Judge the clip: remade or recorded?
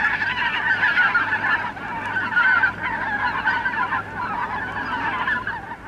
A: recorded